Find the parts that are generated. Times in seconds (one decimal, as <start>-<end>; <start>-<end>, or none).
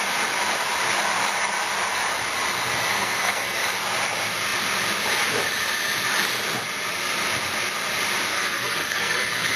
2.9-3.6; 8.3-9.6